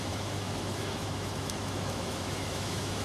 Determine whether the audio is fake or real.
fake